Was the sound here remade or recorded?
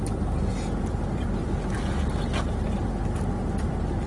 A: recorded